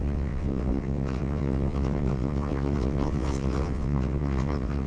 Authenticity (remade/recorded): remade